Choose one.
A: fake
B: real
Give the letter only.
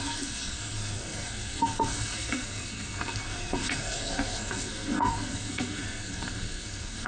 A